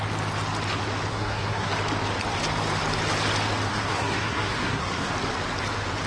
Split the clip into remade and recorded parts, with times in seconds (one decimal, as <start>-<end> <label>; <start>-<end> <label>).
0.0-1.1 recorded; 1.1-1.7 remade; 1.7-3.7 recorded; 3.7-5.1 remade; 5.1-6.1 recorded